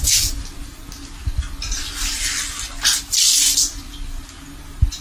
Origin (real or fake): real